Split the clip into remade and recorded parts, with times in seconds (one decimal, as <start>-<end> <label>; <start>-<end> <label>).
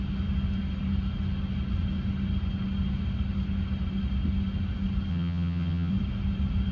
0.0-5.1 recorded; 5.1-5.9 remade; 5.9-6.7 recorded